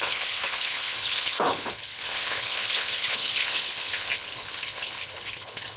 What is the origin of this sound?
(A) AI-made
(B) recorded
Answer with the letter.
A